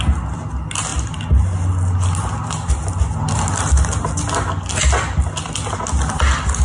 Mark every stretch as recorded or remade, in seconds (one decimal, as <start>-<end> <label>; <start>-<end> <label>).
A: 0.0-6.6 recorded